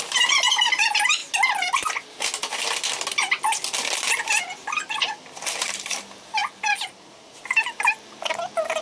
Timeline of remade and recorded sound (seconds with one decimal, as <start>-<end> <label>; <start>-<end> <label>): 0.0-8.8 recorded